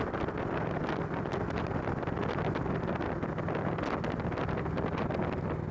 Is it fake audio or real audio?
real